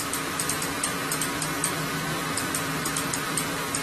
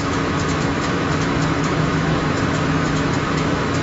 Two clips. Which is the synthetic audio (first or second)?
second